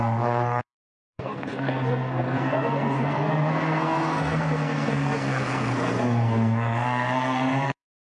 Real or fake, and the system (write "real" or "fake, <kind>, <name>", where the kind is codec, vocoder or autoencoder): fake, codec, SNAC